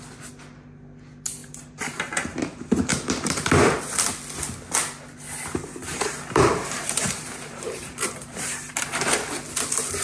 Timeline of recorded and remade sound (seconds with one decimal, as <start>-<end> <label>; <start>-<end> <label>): 0.0-1.4 recorded; 1.4-3.8 remade; 3.8-5.8 recorded; 5.8-8.8 remade; 8.8-10.0 recorded